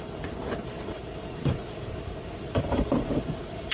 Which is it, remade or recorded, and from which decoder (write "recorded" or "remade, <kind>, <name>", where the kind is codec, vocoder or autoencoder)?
remade, vocoder, BigVGAN v2